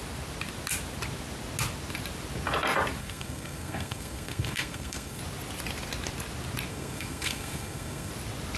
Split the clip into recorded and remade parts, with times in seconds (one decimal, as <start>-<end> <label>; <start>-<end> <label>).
0.0-3.0 recorded; 3.0-5.2 remade; 5.2-6.7 recorded; 6.7-8.1 remade; 8.1-8.6 recorded